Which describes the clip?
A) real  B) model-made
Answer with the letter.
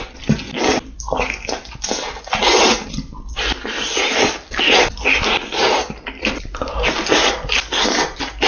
A